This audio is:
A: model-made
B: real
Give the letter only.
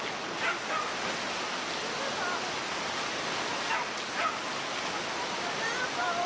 B